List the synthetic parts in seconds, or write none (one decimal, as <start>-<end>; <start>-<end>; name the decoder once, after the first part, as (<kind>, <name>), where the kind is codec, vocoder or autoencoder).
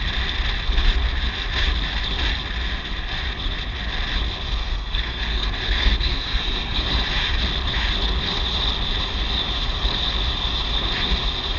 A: 4.6-6.8 (codec, SNAC)